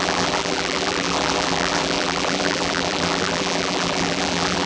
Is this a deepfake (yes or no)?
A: yes